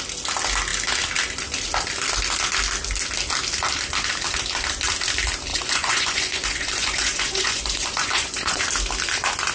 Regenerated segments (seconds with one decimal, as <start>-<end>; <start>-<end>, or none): 5.5-8.6